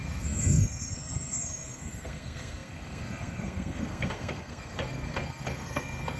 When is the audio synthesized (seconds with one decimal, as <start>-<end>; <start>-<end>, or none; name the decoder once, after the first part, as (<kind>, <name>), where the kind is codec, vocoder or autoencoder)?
0.0-6.2 (codec, SNAC)